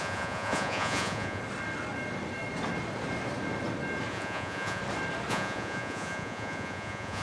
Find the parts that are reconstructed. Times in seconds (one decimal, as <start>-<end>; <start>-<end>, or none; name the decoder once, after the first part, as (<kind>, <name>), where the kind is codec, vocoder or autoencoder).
0.0-1.4 (vocoder, Vocos); 4.1-4.8; 5.3-7.2